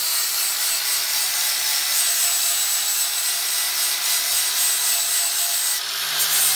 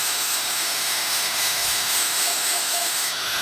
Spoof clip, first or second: second